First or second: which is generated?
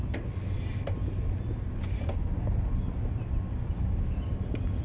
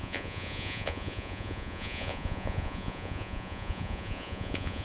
second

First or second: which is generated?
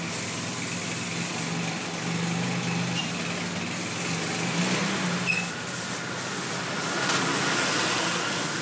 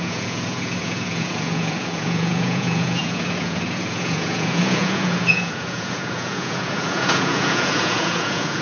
second